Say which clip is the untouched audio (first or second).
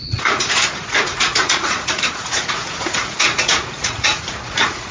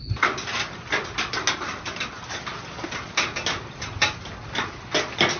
second